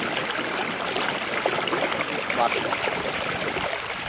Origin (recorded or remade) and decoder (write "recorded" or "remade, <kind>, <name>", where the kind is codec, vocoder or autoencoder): recorded